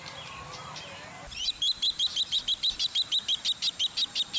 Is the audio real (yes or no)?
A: yes